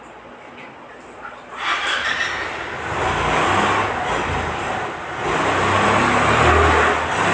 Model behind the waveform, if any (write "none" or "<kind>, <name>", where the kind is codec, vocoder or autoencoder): none